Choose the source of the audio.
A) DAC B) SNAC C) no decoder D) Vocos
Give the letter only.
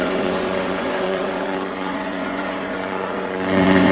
D